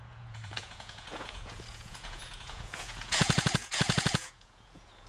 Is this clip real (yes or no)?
no